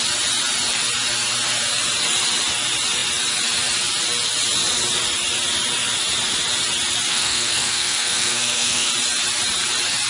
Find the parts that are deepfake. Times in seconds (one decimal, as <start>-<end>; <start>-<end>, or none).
7.1-8.9